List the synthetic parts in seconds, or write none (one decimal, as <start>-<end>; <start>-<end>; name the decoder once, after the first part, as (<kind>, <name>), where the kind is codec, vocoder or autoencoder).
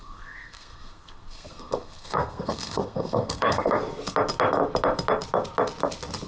0.0-3.8 (codec, SNAC)